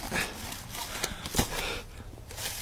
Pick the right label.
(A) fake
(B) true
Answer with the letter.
B